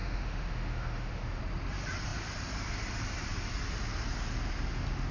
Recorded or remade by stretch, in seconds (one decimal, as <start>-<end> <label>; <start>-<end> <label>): 0.0-1.4 remade; 1.4-5.1 recorded